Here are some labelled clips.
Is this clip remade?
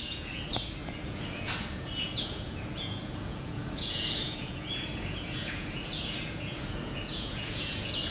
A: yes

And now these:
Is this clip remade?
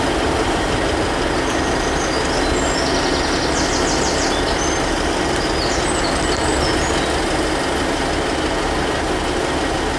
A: no